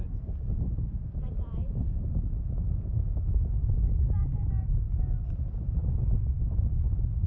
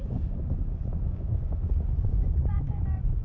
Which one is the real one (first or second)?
first